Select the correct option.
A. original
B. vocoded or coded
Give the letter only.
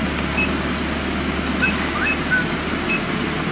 A